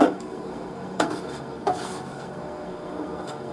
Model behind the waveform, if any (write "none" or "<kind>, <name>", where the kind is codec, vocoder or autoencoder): codec, SNAC